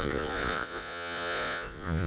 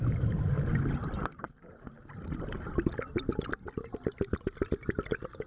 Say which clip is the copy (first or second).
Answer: first